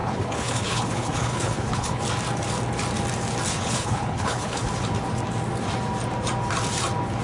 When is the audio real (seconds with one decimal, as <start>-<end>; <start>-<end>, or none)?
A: 2.0-3.5; 4.7-7.2